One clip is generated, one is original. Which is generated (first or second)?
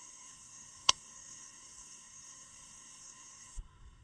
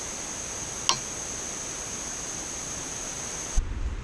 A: first